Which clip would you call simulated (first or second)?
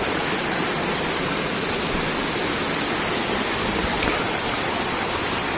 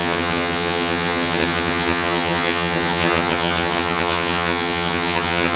second